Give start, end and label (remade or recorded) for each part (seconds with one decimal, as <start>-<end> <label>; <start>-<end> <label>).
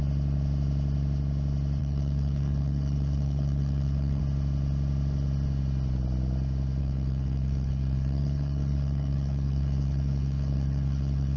0.0-1.8 recorded; 1.8-4.2 remade; 4.2-6.8 recorded; 6.8-11.4 remade